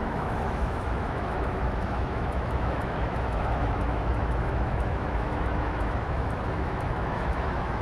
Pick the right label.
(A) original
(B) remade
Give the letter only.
B